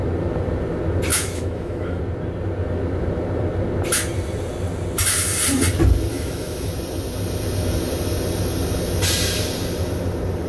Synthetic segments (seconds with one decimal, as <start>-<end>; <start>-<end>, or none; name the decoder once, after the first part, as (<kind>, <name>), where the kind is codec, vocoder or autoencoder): 1.1-2.0 (autoencoder, DAC-VAE); 6.1-6.7